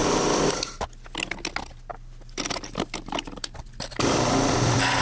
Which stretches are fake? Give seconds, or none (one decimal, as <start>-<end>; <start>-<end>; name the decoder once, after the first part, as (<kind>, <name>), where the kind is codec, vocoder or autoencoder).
1.9-5.0 (vocoder, BigVGAN v2)